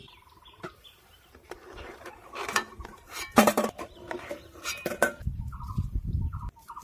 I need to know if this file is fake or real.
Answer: fake